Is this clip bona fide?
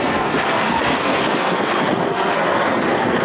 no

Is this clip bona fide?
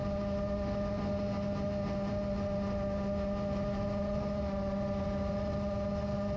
yes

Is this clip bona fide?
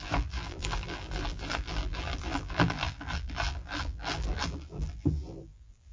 no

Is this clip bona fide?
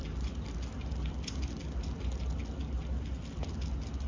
yes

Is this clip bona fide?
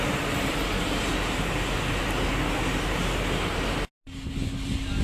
yes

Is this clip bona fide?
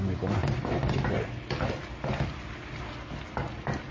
yes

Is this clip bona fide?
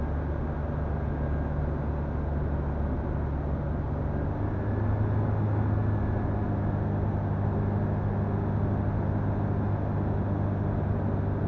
yes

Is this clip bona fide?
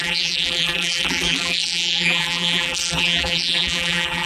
no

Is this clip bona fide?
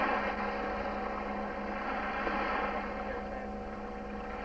yes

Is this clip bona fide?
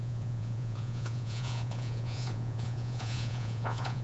no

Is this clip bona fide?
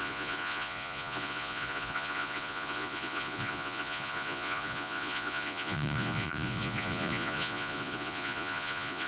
no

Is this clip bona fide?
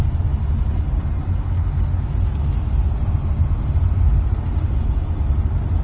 yes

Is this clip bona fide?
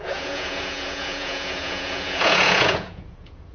no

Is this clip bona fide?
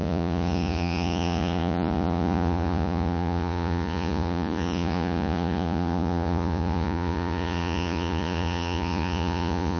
no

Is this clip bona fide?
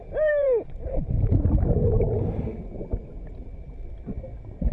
no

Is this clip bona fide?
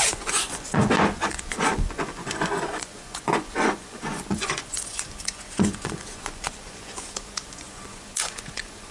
no